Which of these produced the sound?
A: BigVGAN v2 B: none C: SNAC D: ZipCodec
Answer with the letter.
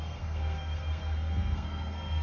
C